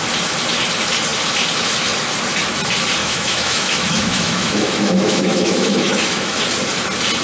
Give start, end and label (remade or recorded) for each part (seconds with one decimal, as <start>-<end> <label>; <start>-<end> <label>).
0.0-3.0 recorded; 3.0-6.4 remade; 6.4-7.2 recorded